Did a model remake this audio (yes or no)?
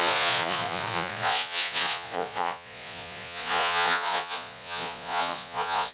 yes